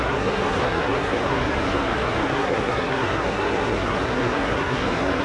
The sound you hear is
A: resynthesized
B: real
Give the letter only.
A